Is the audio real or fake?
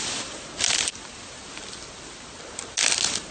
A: real